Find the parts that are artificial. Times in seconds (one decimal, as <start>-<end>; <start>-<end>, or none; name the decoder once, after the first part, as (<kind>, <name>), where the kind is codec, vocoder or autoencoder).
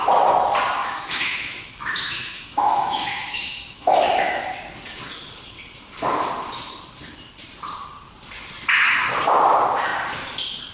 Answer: 0.8-4.5 (autoencoder, DAC-VAE)